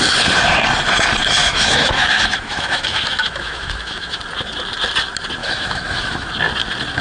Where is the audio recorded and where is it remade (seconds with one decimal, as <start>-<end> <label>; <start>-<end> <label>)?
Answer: 0.0-1.4 recorded; 1.4-4.2 remade; 4.2-5.4 recorded; 5.4-6.3 remade; 6.3-7.0 recorded